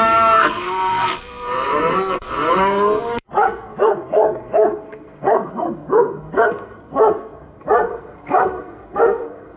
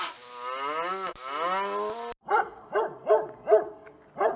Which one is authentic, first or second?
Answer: second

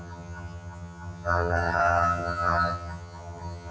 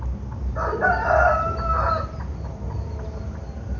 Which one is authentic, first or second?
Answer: second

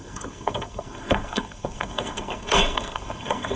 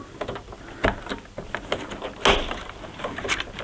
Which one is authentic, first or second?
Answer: second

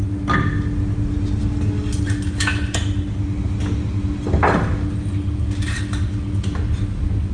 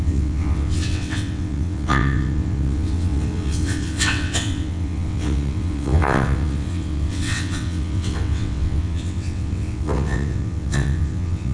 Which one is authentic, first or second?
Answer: first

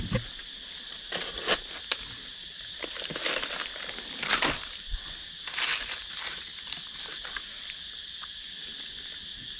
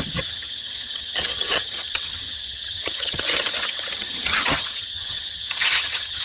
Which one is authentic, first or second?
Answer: first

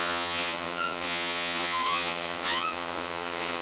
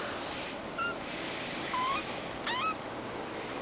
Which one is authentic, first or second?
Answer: second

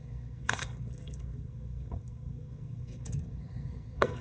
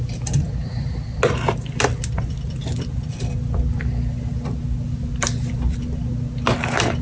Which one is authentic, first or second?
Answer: second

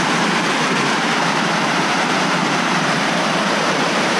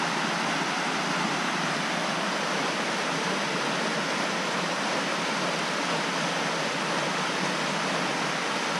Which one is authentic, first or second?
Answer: second